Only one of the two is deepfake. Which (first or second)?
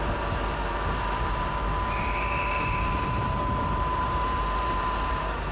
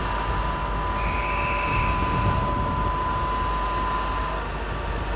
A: first